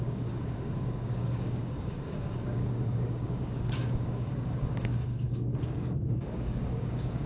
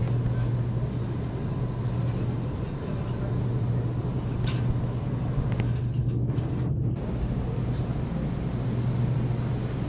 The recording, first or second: second